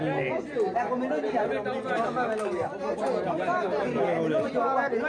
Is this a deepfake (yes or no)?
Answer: no